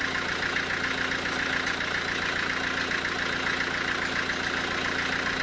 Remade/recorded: recorded